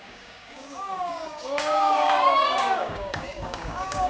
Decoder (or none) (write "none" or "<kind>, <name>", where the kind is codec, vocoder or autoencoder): codec, DAC